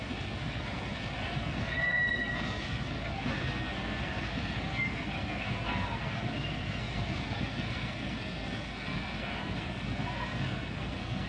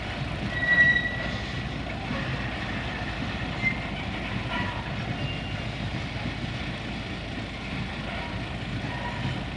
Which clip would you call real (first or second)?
second